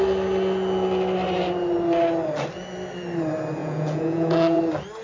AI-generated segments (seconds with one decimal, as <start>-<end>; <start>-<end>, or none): 3.6-4.6